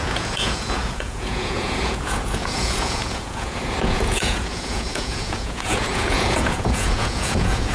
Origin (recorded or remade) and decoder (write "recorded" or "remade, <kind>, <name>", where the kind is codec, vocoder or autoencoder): remade, vocoder, Vocos